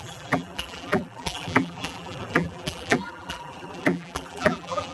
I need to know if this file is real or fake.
fake